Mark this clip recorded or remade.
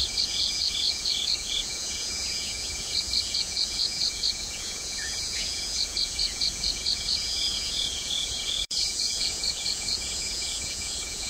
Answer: remade